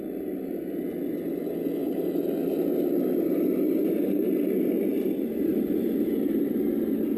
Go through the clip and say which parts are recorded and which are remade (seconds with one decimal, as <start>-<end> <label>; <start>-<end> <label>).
0.0-7.2 recorded